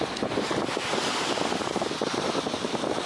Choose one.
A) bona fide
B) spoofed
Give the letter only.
A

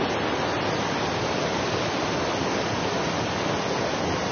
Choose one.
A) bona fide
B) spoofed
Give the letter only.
A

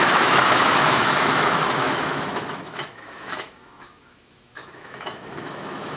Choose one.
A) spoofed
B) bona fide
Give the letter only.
A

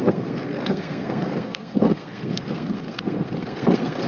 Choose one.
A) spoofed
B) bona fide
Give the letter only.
A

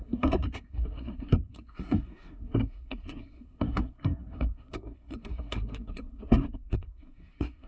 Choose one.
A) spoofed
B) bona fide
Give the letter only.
A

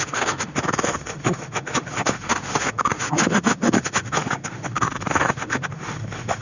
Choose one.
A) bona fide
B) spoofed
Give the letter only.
B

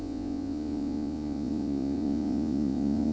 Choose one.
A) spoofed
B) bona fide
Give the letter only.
A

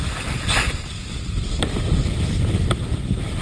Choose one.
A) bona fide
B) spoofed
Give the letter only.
A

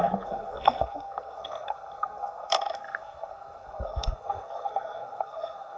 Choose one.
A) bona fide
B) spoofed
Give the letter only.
B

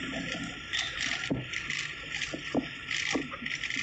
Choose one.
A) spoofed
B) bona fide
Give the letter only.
B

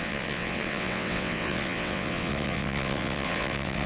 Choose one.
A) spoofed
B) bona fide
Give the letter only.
A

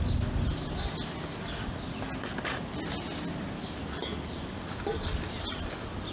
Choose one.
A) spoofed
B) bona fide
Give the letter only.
B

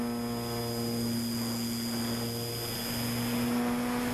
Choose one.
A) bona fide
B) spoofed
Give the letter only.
A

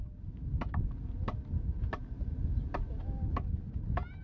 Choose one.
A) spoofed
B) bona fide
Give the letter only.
B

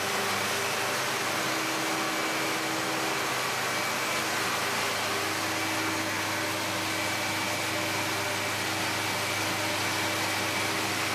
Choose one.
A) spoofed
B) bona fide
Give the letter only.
B